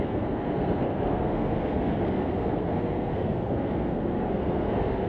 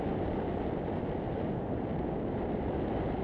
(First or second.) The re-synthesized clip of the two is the first